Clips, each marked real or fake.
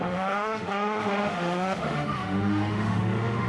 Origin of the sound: fake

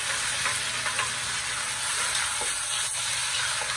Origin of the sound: real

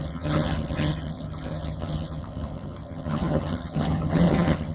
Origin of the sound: fake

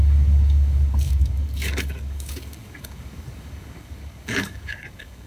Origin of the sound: fake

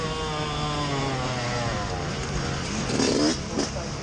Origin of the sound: real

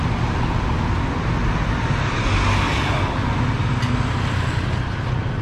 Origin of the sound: real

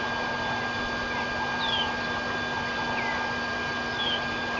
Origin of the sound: real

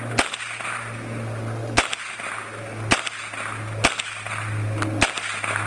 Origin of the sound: real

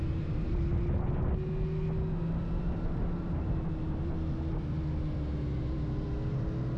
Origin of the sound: real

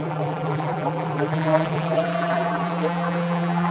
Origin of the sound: fake